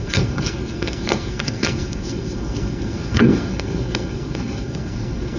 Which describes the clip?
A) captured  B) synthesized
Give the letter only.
B